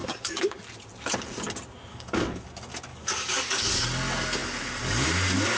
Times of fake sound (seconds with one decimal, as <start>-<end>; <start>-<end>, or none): 0.0-0.6; 1.9-2.4; 2.9-3.8